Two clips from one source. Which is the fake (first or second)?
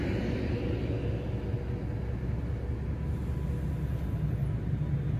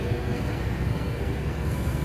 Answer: second